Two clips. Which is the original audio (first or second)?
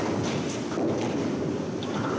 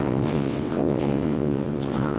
first